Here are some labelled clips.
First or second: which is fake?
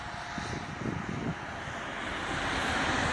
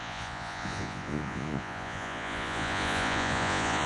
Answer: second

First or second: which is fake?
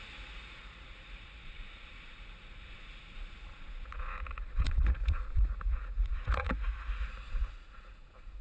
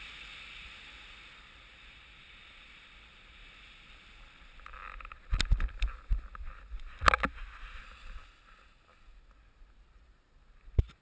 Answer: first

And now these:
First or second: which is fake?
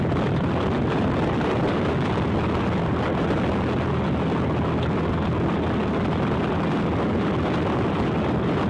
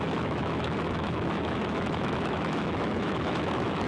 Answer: second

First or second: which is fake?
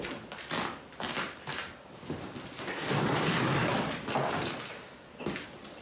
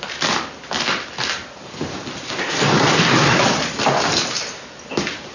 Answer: second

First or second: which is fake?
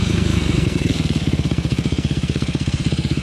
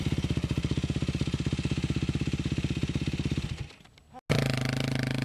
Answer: first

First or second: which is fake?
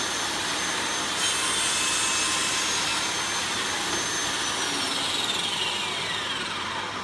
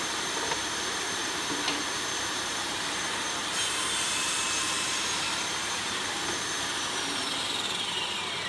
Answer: second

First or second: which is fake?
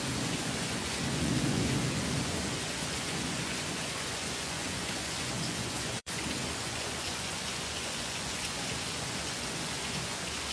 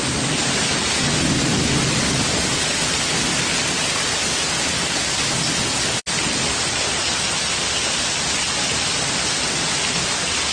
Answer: first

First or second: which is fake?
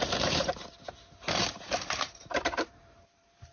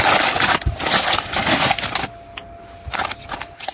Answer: first